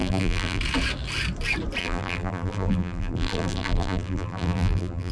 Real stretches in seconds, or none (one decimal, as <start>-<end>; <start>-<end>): 0.6-1.8